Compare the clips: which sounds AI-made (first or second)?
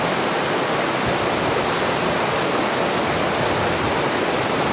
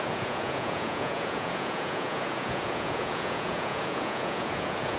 second